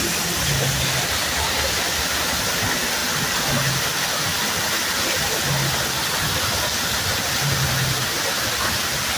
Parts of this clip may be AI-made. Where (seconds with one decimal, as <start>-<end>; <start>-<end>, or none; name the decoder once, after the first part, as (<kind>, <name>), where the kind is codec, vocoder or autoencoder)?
none